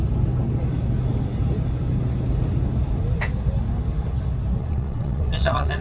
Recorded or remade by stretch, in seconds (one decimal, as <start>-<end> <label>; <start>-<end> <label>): 0.0-4.6 recorded; 4.6-5.8 remade